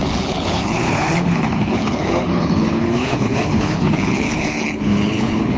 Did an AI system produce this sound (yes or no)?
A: yes